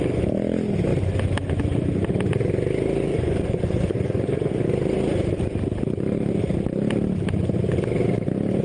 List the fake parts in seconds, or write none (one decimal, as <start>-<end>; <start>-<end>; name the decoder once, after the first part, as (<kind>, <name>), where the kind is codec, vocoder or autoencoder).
3.1-4.5 (vocoder, Vocos)